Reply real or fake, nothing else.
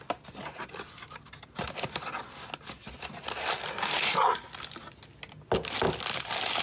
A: real